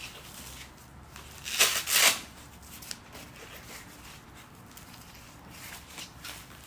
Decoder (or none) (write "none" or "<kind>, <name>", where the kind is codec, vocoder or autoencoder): none